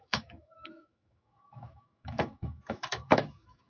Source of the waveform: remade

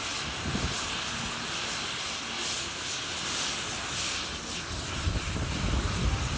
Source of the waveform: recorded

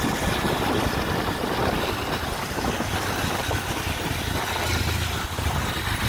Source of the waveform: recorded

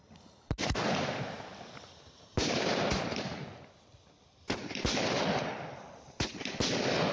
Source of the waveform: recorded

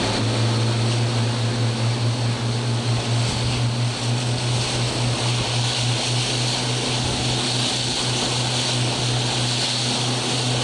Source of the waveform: recorded